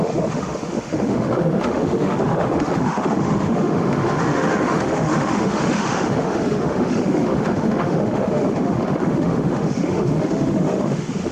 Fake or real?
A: fake